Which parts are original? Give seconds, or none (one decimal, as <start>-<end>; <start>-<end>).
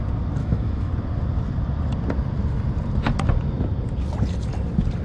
0.0-0.4; 0.9-5.0